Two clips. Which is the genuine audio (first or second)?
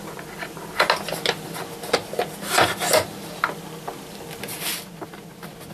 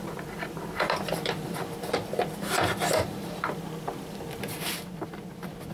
first